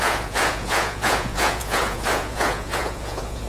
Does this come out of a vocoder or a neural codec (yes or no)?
yes